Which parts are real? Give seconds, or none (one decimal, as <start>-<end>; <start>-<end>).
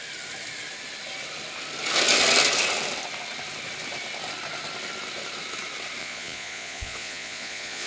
0.0-6.0